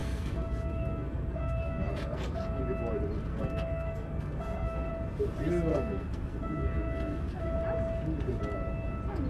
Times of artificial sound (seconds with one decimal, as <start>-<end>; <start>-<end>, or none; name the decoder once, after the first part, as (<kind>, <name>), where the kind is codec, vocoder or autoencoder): 0.0-2.6 (codec, SNAC); 3.3-4.9; 5.7-7.4

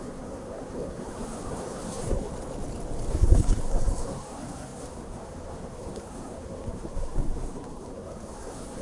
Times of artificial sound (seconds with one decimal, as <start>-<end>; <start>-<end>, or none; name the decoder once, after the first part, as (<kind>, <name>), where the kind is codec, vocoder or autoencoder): 0.0-2.3 (codec, SNAC); 3.1-8.8

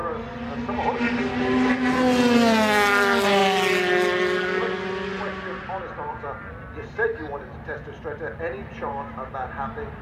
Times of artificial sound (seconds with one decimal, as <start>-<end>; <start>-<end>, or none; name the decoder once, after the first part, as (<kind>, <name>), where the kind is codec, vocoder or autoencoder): none

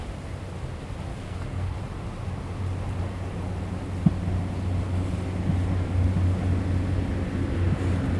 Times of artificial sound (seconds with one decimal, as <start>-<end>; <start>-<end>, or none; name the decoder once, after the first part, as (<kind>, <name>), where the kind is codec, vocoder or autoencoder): 1.1-1.8 (codec, SNAC)